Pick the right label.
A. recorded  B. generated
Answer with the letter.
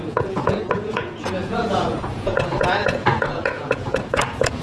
B